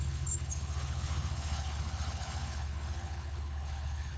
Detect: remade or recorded remade